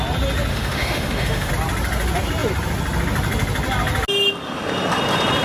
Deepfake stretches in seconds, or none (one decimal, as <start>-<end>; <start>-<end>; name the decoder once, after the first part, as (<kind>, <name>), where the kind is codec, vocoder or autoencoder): 0.5-1.5 (autoencoder, DAC-VAE)